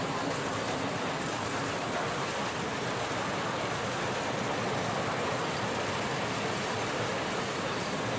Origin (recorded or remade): recorded